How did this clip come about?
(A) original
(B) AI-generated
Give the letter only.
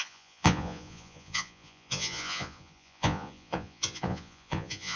B